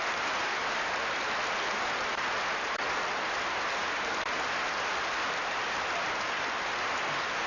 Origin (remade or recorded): recorded